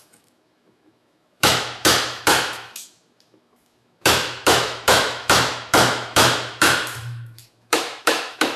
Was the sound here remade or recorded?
remade